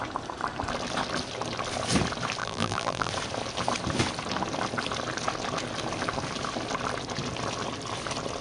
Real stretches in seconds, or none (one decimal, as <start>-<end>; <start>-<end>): 0.0-2.4; 3.1-8.4